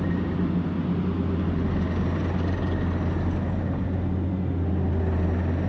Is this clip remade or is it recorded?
recorded